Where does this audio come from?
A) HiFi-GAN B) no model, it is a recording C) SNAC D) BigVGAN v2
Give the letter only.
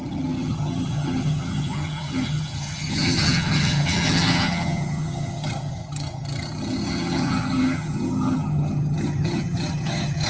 A